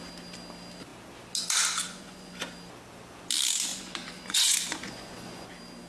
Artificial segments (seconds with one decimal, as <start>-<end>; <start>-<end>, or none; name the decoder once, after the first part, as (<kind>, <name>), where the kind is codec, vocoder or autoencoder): 1.8-2.4 (vocoder, Vocos); 3.7-5.5